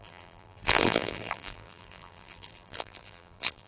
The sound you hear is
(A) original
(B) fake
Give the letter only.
B